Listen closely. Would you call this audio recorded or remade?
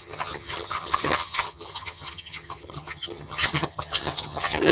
remade